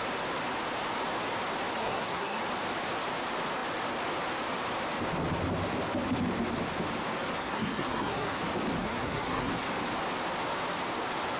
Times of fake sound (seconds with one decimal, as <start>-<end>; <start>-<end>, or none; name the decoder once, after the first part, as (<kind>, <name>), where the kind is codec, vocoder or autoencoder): 1.8-2.4 (codec, SNAC); 7.4-8.4; 8.8-9.5